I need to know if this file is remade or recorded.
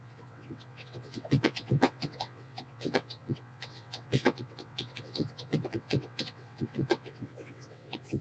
remade